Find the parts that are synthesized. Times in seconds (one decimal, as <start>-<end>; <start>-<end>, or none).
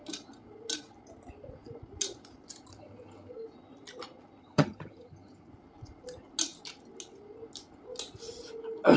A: 2.7-3.3; 4.4-5.5